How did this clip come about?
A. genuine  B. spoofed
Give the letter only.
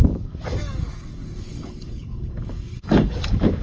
B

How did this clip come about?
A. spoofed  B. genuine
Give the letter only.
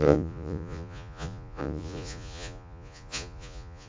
A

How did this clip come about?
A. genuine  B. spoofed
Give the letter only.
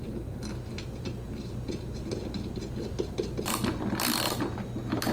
A